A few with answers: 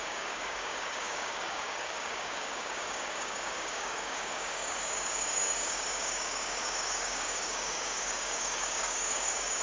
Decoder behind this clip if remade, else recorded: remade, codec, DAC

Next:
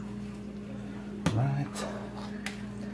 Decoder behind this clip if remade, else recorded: recorded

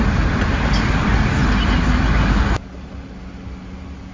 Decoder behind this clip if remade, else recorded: recorded